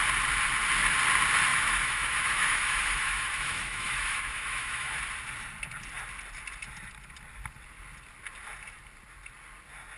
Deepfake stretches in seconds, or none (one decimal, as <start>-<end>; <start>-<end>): 1.5-5.0